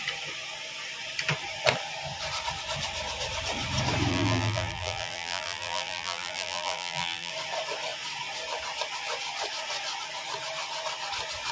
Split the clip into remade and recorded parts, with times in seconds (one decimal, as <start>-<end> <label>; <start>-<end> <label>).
0.0-4.1 recorded; 4.1-7.3 remade; 7.3-11.5 recorded